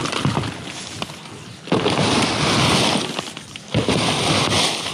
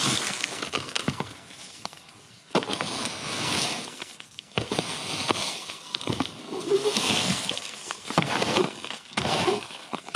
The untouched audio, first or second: first